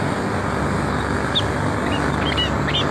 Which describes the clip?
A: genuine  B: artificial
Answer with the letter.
A